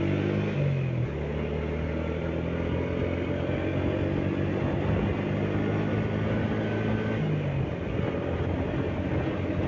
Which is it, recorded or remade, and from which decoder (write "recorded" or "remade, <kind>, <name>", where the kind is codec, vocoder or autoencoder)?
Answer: recorded